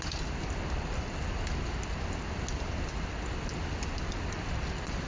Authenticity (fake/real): real